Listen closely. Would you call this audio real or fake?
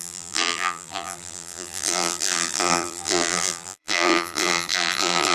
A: fake